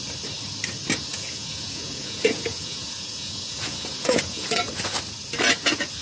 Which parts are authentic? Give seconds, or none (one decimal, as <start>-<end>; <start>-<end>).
0.0-1.1; 4.7-6.0

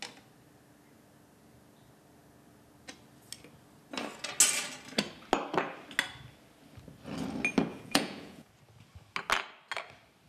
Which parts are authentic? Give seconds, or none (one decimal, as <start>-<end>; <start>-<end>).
0.0-7.7; 8.5-10.3

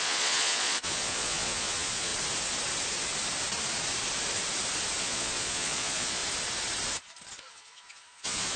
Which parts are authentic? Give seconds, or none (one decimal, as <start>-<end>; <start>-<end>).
2.1-5.0; 6.2-7.5

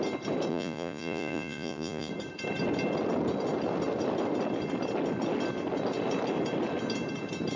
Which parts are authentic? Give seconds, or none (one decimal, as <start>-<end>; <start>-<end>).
0.0-0.5; 2.1-7.6

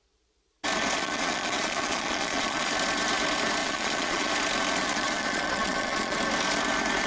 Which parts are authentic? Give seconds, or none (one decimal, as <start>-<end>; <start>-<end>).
0.0-1.0; 2.7-3.6; 4.3-4.8; 6.2-7.1